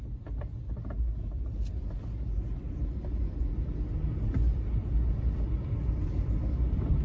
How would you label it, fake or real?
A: real